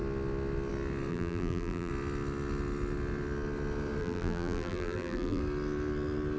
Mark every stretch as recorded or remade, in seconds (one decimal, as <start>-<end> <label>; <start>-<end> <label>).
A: 0.0-1.1 recorded; 1.1-1.9 remade; 1.9-4.0 recorded; 4.0-5.4 remade; 5.4-6.4 recorded